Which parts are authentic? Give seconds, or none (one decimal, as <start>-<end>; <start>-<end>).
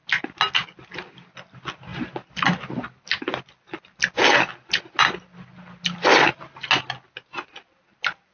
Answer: 0.0-8.3